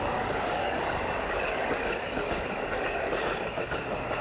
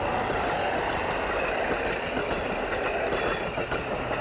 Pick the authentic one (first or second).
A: second